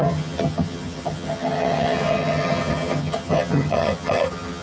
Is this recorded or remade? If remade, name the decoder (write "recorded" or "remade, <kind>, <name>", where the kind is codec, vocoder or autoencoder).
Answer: remade, vocoder, HiFi-GAN